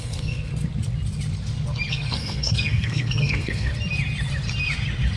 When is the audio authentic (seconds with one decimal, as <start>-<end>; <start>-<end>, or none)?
0.5-1.9; 3.7-5.2